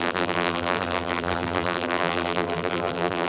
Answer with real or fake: fake